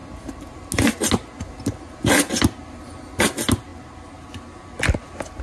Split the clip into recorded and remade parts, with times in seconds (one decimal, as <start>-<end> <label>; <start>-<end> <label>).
0.0-5.4 recorded